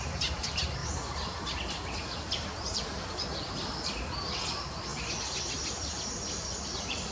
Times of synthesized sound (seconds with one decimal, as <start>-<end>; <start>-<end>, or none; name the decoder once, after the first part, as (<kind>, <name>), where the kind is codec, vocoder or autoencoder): 0.8-4.1 (vocoder, BigVGAN v2); 4.9-7.1